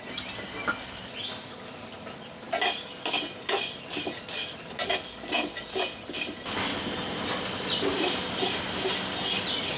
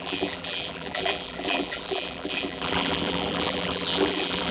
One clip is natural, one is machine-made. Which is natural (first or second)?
first